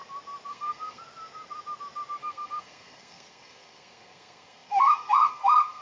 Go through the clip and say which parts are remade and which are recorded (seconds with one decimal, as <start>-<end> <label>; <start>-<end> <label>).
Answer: 0.0-0.5 recorded; 0.5-1.0 remade; 1.0-2.2 recorded; 2.2-5.8 remade